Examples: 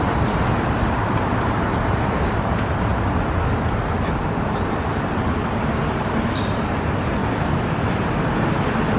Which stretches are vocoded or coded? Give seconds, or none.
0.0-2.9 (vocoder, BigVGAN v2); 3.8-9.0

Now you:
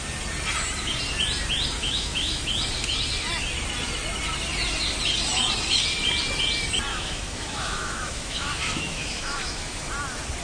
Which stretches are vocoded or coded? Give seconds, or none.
1.8-2.4 (autoencoder, DAC-VAE); 6.9-9.9